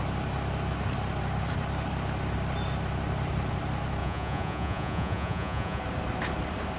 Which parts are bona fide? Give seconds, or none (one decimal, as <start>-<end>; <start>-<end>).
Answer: 0.0-4.0; 5.8-6.8